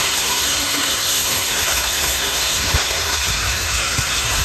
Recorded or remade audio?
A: remade